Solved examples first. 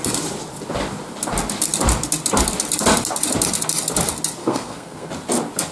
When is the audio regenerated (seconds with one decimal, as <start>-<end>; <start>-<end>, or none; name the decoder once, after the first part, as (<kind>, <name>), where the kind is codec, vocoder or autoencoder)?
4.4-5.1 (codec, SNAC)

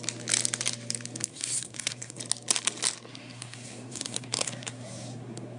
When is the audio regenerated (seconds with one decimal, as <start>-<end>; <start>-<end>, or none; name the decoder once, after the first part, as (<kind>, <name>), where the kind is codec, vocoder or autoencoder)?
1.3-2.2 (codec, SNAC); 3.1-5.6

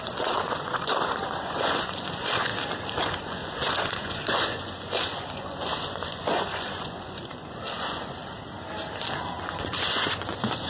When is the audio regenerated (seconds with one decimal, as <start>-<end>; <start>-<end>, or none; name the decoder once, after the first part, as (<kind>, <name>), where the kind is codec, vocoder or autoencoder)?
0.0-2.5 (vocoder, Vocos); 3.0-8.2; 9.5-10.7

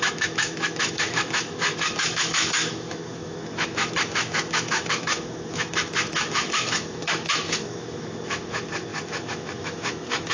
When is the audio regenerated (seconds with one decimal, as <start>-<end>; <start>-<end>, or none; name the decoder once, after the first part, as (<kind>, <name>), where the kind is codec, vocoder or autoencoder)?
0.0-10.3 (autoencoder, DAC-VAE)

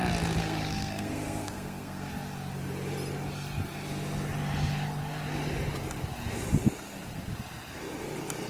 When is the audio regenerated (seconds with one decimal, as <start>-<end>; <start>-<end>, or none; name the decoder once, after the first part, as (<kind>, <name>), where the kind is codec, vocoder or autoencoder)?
0.4-2.1 (codec, SNAC)